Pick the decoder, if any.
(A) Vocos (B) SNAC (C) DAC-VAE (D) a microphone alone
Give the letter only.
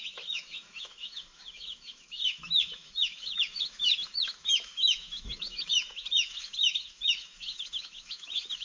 C